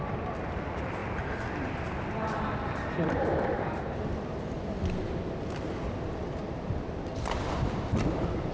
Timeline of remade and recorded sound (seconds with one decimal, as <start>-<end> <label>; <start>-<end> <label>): 0.0-8.5 recorded